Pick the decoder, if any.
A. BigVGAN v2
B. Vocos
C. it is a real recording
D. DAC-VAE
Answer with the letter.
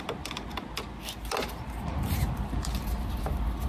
C